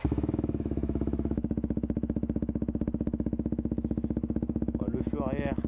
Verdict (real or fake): fake